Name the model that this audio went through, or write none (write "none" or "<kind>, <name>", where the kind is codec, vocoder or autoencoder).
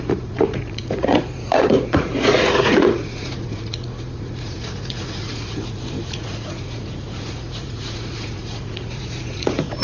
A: vocoder, Vocos